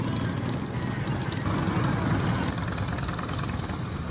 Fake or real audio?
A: real